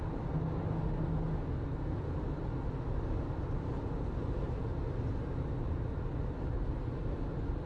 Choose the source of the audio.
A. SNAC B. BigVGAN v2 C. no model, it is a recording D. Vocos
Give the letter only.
C